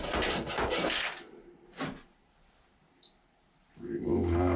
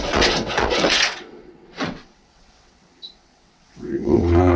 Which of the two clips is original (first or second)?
first